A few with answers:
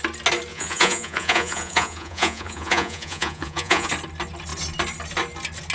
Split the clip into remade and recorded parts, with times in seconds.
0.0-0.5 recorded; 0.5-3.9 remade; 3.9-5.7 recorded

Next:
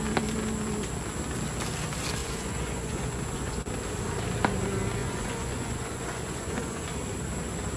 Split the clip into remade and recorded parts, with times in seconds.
0.0-2.2 recorded; 2.2-3.7 remade; 3.7-5.0 recorded; 5.0-6.9 remade; 6.9-7.8 recorded